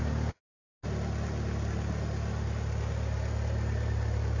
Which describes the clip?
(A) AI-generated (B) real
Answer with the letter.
B